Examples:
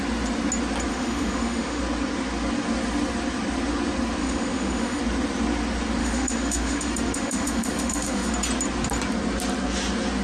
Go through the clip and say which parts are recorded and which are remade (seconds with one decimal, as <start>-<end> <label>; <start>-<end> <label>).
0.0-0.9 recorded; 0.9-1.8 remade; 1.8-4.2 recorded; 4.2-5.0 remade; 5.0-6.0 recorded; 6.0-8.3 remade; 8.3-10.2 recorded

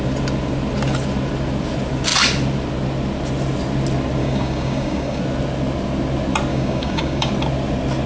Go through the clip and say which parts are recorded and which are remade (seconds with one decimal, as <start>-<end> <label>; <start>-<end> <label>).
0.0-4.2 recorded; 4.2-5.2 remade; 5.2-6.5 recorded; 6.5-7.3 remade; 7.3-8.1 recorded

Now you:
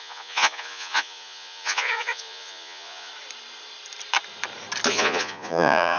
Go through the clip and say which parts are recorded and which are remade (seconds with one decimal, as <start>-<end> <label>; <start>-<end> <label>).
0.0-3.1 remade; 3.1-4.9 recorded; 4.9-6.0 remade